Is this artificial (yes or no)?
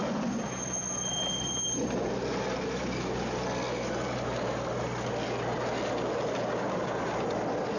no